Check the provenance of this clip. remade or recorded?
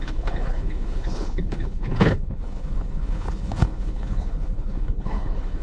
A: remade